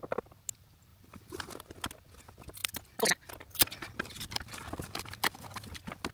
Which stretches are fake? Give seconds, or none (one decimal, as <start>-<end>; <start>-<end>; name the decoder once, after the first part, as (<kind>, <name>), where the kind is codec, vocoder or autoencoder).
0.9-1.5 (vocoder, BigVGAN v2)